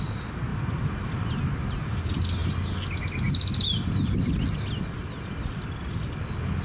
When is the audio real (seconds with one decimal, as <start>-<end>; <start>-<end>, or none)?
0.0-6.6